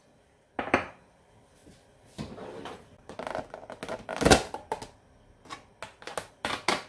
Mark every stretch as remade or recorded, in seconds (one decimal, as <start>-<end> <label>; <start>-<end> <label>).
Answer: 0.0-6.9 recorded